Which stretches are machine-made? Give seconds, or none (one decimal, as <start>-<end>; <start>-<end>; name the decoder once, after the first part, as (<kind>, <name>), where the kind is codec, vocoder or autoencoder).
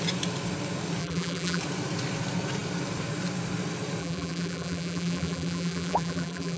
1.0-1.6 (vocoder, BigVGAN v2); 4.0-6.6